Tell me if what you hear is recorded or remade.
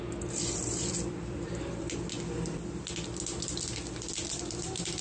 remade